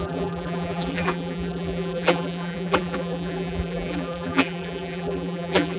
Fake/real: fake